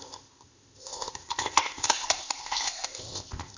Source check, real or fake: fake